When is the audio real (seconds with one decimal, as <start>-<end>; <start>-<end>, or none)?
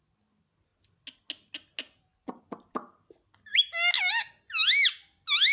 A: 0.0-3.5; 4.1-5.5